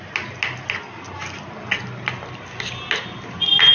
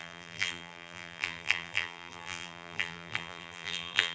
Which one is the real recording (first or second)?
first